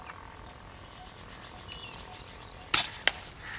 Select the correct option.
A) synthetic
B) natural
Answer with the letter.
B